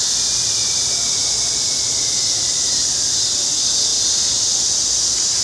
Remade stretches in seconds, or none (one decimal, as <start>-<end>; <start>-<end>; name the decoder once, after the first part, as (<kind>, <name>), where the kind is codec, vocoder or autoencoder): none